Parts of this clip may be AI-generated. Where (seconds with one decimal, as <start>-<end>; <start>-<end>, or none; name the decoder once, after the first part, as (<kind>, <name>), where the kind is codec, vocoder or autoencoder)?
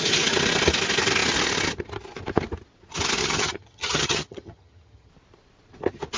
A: 3.2-5.1 (vocoder, HiFi-GAN)